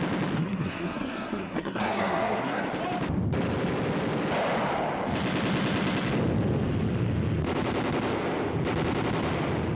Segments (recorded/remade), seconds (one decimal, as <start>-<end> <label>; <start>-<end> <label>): 0.0-0.4 recorded; 0.4-2.6 remade; 2.6-9.8 recorded